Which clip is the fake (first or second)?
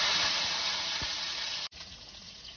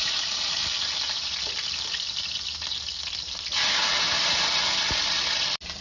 first